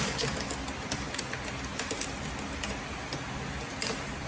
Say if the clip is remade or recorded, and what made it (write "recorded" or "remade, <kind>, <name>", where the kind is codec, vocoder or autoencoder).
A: recorded